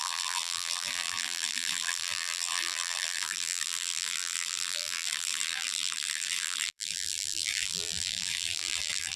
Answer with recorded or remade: remade